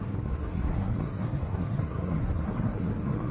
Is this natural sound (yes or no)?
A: no